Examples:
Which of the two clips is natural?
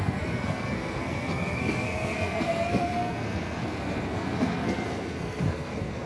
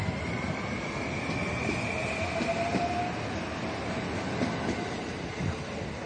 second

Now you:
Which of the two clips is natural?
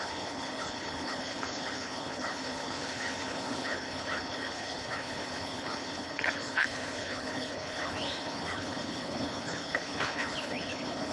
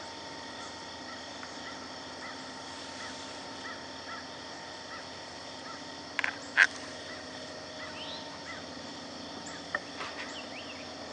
second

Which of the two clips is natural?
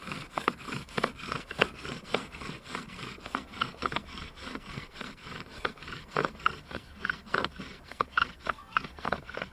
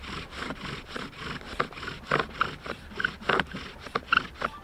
second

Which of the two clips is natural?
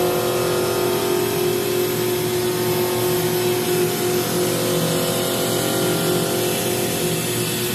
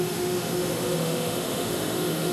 first